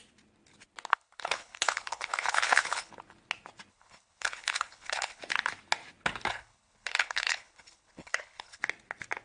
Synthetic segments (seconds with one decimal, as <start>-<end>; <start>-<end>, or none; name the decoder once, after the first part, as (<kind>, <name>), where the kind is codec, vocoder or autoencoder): 0.9-2.9 (codec, HILCodec); 3.7-5.2; 6.3-8.6